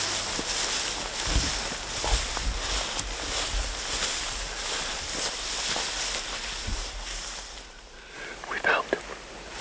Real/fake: real